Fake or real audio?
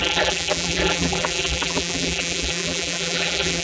fake